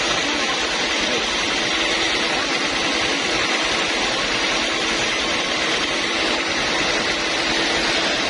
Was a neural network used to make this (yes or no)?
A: no